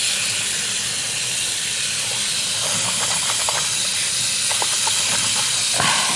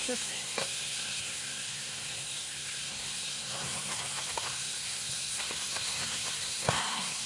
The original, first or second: first